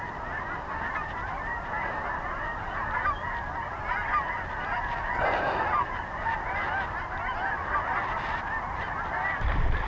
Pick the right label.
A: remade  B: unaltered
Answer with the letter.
A